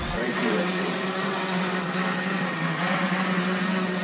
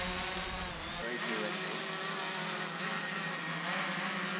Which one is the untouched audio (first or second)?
second